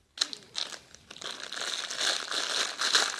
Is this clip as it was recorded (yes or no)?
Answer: yes